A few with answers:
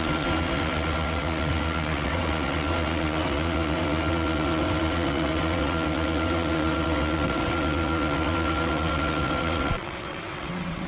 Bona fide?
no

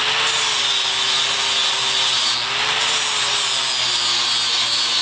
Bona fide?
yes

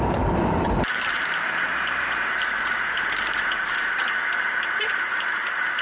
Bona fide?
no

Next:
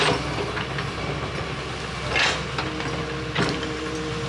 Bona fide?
yes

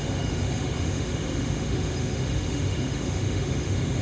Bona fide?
no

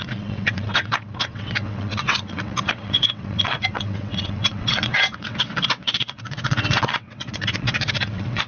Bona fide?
no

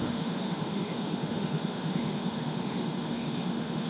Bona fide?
no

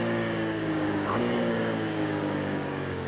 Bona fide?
no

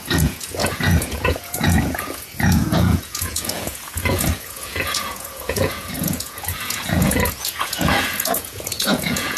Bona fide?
no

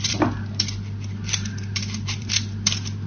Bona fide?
no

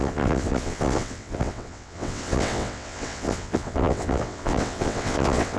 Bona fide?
no